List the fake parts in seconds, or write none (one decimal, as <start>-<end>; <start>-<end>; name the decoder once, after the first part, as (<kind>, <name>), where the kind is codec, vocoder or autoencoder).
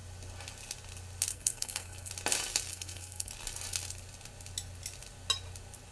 1.3-2.1 (codec, SNAC); 2.7-3.3